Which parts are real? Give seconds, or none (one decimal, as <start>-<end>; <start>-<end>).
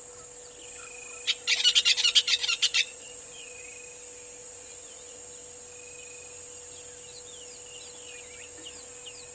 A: 0.0-2.4; 3.6-4.4; 5.2-9.3